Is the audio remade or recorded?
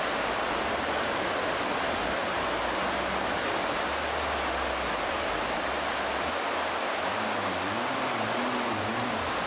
recorded